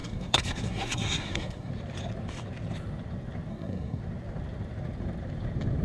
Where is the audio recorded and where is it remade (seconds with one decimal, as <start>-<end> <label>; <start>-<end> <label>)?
0.0-1.7 remade; 1.7-3.5 recorded; 3.5-4.0 remade; 4.0-5.8 recorded